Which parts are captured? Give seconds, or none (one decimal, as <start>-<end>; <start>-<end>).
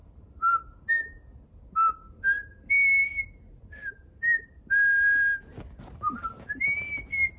0.6-7.4